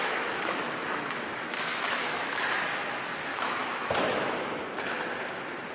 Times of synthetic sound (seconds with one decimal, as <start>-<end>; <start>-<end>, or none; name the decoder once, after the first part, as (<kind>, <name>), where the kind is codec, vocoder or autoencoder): 0.0-2.7 (autoencoder, DAC-VAE); 3.3-4.7